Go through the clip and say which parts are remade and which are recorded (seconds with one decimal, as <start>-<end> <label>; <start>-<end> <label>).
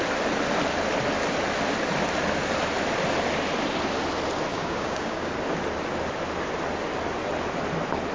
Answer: 0.0-4.5 recorded; 4.5-5.3 remade; 5.3-8.1 recorded